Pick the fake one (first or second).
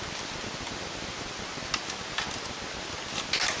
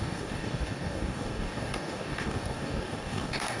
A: second